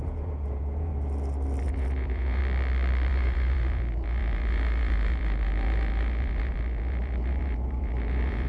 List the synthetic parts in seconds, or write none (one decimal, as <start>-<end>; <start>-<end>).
0.0-0.9; 1.6-2.4; 3.1-8.5